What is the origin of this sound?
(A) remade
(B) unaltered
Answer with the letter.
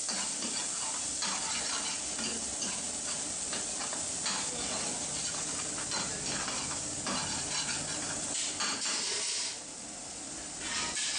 B